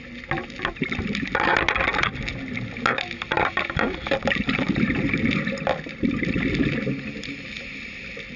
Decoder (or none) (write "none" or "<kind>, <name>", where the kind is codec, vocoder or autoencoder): none